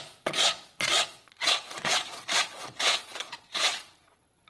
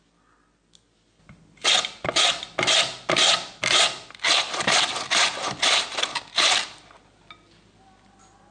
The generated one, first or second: first